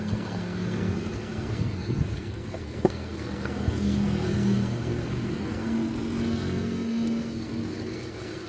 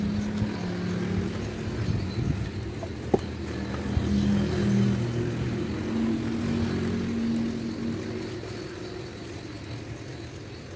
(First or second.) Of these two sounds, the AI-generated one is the first